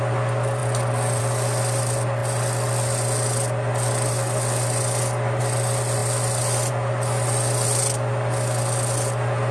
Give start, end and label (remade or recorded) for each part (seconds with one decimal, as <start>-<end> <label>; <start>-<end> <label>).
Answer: 0.0-9.5 recorded